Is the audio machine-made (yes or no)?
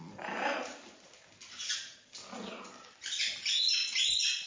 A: no